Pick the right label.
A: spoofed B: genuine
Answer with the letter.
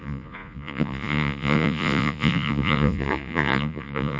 A